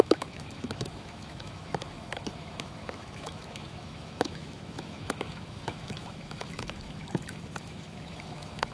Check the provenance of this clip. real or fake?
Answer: fake